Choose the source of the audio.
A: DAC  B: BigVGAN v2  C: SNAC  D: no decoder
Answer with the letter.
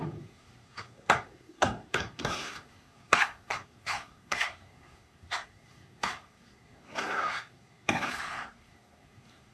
C